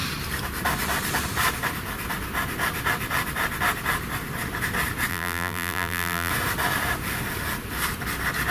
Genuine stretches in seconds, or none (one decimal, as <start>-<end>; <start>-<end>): 0.0-5.1; 6.3-8.5